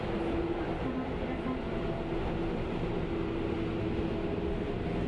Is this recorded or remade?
recorded